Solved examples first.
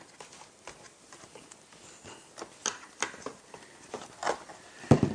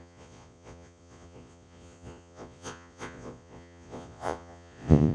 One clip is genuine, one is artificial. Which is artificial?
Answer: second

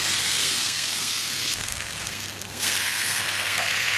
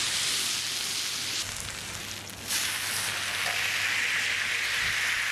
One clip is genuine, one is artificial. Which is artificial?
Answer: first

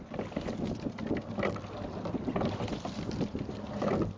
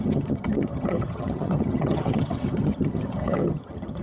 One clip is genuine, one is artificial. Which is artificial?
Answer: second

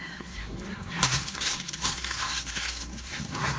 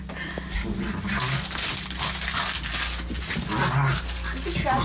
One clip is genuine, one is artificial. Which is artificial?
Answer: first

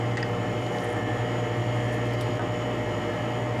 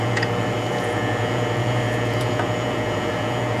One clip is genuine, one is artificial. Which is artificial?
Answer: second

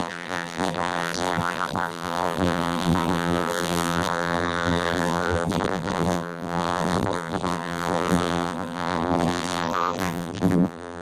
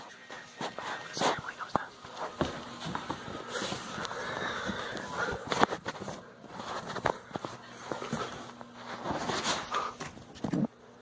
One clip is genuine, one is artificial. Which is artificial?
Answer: first